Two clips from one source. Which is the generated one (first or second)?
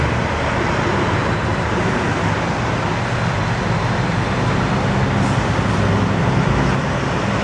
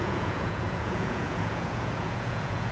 second